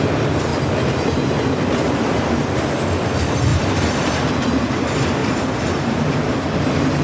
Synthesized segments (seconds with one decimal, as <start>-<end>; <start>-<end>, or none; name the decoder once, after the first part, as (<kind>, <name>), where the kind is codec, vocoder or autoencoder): 3.5-4.3 (vocoder, BigVGAN v2); 5.2-7.0